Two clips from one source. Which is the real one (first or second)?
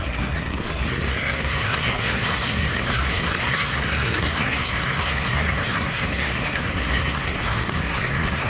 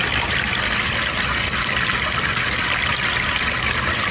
second